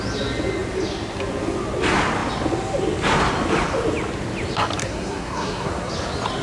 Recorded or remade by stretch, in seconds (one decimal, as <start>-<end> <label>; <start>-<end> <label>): 0.0-4.8 recorded; 4.8-5.9 remade; 5.9-6.4 recorded